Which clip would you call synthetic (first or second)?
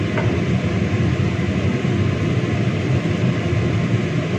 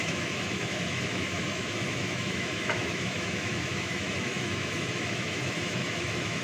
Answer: second